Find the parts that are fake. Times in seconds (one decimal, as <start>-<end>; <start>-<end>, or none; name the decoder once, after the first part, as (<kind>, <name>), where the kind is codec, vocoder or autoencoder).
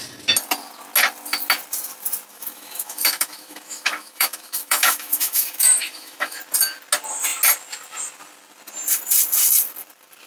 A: 2.3-6.4 (autoencoder, DAC-VAE)